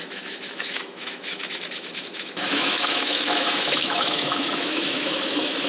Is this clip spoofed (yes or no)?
yes